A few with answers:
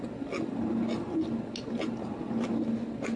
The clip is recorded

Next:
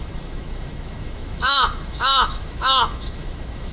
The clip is remade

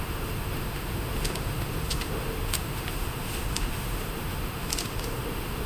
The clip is remade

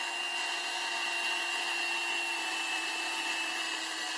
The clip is recorded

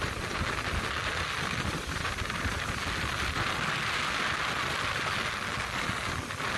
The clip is recorded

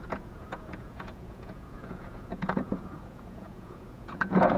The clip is remade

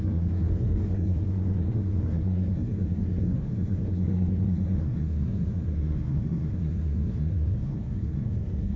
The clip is remade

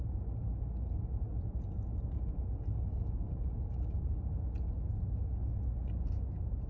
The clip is recorded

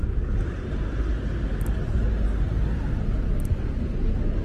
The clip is recorded